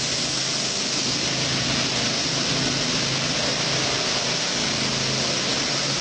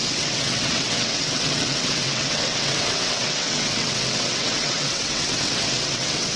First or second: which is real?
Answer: first